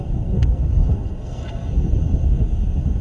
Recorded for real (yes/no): no